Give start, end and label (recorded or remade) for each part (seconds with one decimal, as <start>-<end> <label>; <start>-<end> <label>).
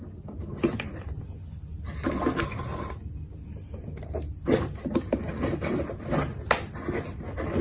0.0-7.6 recorded